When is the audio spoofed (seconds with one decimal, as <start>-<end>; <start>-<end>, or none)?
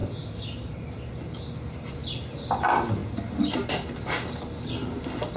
none